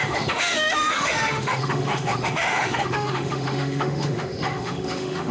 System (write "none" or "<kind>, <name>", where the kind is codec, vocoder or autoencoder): autoencoder, DAC-VAE